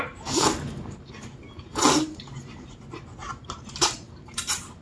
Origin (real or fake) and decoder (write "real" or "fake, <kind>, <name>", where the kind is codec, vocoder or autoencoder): fake, vocoder, BigVGAN v2